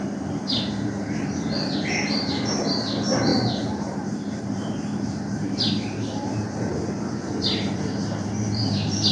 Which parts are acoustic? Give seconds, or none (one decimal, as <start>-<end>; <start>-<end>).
none